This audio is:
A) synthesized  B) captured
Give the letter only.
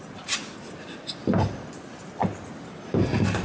B